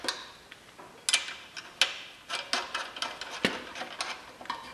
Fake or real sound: real